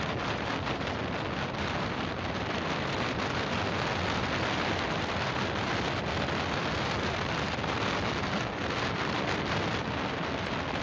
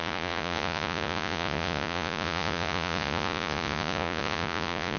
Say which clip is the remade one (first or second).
second